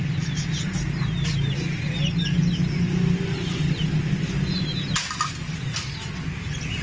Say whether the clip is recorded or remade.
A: recorded